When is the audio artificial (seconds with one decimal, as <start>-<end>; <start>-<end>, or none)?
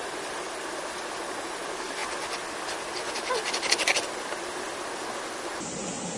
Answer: none